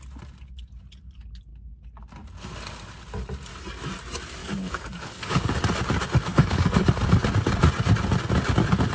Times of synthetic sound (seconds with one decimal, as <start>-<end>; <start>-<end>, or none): 4.4-5.6; 6.3-6.9